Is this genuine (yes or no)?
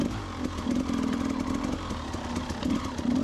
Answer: yes